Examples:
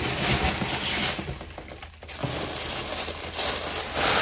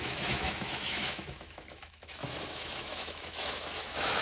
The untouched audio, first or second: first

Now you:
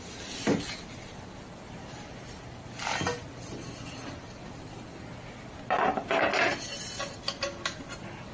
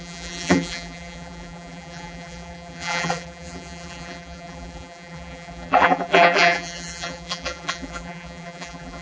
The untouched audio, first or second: first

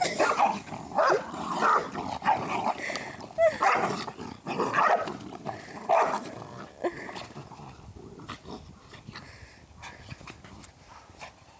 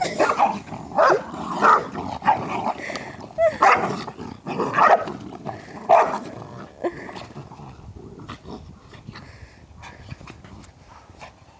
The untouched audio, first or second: second